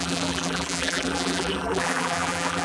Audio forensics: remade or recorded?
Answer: remade